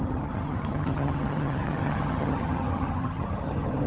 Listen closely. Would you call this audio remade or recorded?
remade